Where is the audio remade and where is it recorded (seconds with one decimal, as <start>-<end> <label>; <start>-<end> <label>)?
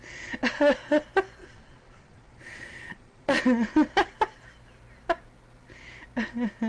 0.0-1.4 recorded; 1.4-3.4 remade; 3.4-6.7 recorded